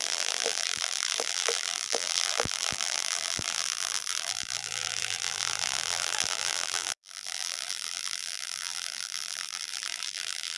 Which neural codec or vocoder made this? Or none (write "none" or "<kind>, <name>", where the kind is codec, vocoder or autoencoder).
vocoder, BigVGAN v2